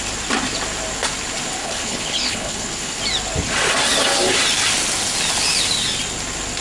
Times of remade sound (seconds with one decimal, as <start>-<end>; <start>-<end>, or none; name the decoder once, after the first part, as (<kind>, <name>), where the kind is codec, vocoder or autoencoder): 1.6-3.0 (codec, HILCodec)